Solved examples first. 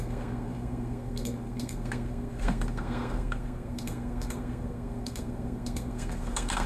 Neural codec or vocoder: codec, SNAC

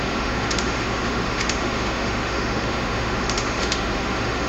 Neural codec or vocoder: autoencoder, DAC-VAE